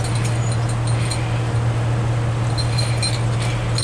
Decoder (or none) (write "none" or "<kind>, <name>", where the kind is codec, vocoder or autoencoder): none